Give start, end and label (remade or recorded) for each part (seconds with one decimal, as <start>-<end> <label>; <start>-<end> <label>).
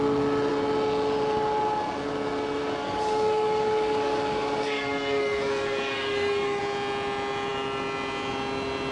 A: 0.0-2.6 recorded; 2.6-6.6 remade; 6.6-8.9 recorded